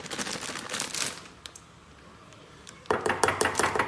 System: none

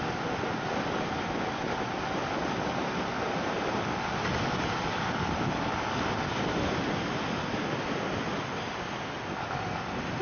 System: none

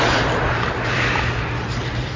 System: vocoder, BigVGAN v2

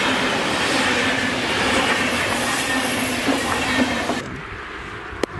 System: vocoder, BigVGAN v2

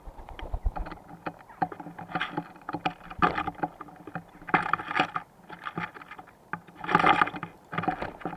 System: none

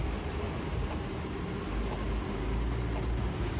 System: none